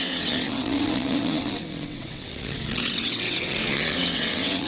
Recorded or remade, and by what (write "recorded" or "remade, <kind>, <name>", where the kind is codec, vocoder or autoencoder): remade, vocoder, WaveNeXt